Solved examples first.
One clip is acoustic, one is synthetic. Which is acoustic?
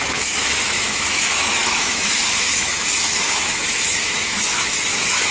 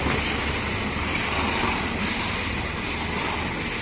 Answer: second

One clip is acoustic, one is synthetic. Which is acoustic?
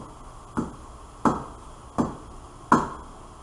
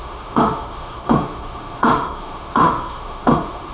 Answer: first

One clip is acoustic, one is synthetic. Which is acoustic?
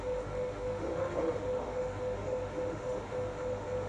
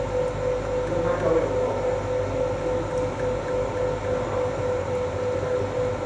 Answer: second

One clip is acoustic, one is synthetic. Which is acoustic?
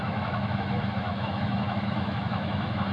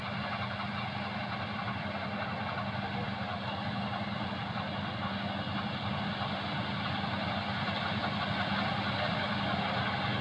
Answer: second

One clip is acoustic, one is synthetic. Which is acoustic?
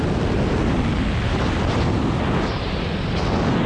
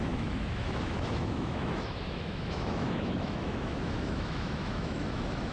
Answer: first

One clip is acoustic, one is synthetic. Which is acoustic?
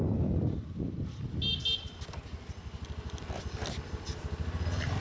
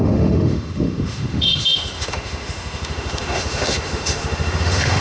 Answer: first